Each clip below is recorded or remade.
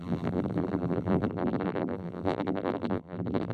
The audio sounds remade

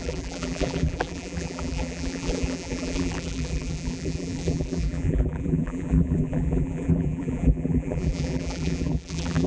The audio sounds remade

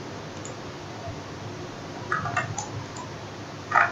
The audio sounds recorded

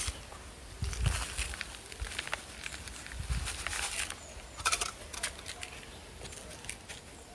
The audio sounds recorded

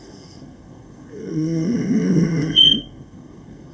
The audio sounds remade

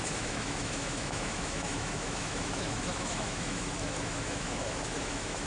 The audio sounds remade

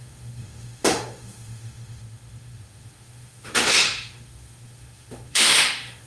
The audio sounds remade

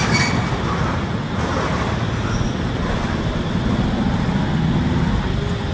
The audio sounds recorded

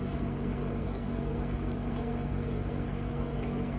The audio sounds remade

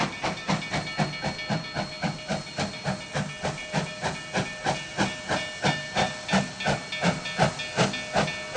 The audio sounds recorded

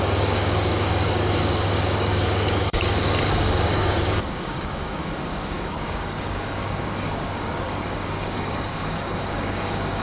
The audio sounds remade